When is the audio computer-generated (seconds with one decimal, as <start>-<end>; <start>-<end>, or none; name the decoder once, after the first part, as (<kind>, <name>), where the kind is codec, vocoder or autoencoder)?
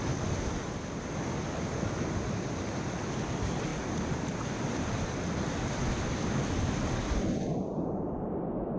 none